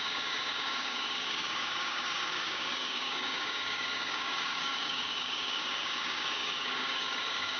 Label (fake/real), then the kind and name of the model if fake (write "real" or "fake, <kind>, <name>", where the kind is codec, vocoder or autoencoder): fake, codec, DAC